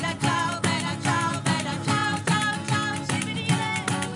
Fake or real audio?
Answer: real